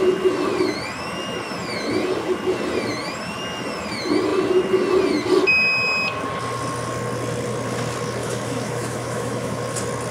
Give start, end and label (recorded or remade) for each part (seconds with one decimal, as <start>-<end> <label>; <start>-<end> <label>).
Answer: 0.0-8.2 recorded; 8.2-9.6 remade; 9.6-10.1 recorded